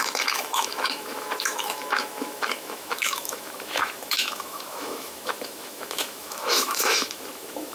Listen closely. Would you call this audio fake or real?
fake